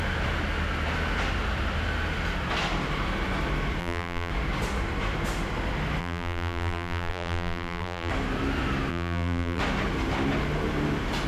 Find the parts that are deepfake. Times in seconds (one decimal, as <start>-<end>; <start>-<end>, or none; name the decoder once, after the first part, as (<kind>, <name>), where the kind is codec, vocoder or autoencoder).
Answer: 3.8-4.3 (vocoder, BigVGAN v2); 6.0-8.1; 8.9-9.6